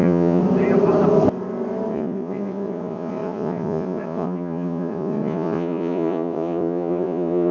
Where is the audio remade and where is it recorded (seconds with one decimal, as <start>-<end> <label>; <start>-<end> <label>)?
0.0-0.4 remade; 0.4-1.9 recorded; 1.9-7.5 remade